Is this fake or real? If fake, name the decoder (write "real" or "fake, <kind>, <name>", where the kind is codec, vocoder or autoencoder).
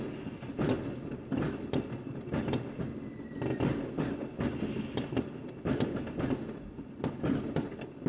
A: real